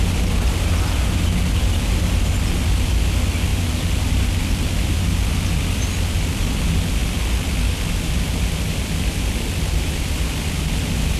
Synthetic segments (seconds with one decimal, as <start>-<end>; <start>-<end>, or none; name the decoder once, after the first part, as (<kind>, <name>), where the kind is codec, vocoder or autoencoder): none